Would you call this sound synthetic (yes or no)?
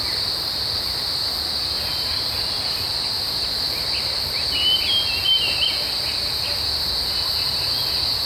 no